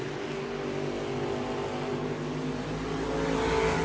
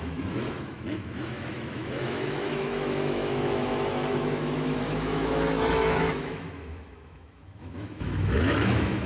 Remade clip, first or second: second